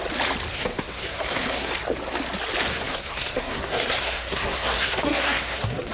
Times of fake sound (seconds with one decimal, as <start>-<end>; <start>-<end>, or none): 0.5-1.7; 2.7-5.9